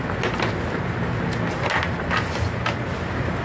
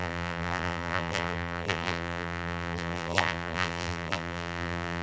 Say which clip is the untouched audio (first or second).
first